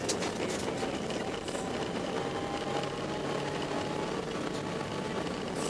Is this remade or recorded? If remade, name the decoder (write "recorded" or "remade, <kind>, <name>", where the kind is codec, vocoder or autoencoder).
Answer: recorded